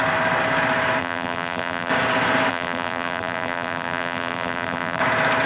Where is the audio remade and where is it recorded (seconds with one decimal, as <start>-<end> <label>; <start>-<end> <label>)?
0.0-1.0 recorded; 1.0-1.9 remade; 1.9-2.5 recorded; 2.5-5.0 remade; 5.0-5.5 recorded